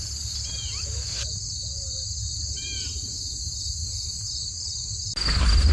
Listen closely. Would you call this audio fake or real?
real